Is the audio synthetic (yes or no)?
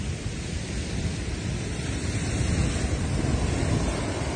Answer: no